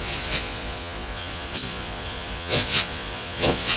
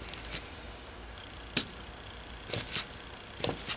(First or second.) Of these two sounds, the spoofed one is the first